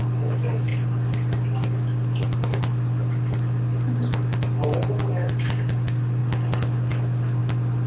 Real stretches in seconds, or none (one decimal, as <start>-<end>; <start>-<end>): 0.0-7.9